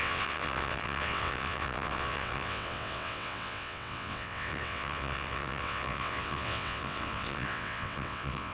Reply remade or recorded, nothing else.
remade